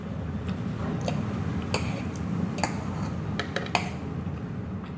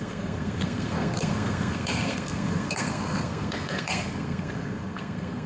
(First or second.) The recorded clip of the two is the first